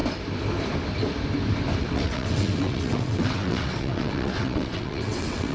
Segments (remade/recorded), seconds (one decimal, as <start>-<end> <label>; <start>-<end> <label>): 0.0-1.8 recorded; 1.8-5.5 remade